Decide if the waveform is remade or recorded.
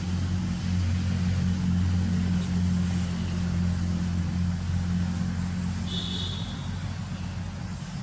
recorded